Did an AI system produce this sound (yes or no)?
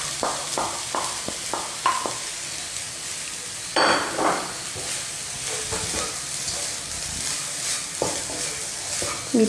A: yes